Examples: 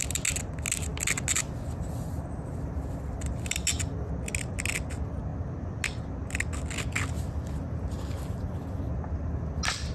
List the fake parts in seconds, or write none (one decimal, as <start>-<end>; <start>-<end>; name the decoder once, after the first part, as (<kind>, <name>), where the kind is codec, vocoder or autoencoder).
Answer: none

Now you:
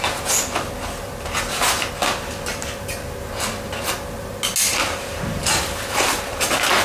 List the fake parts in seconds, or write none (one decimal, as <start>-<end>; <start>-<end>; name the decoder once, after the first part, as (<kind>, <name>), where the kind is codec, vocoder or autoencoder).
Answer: 4.8-6.8 (vocoder, BigVGAN v2)

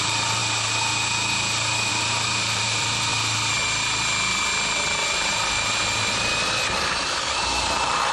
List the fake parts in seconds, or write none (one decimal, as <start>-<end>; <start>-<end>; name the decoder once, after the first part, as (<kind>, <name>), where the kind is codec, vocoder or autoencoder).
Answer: 0.0-0.4 (vocoder, BigVGAN v2); 1.9-3.1; 6.6-8.1